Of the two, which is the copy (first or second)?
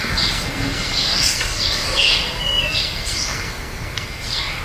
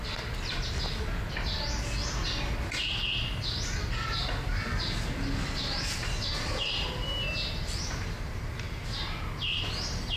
first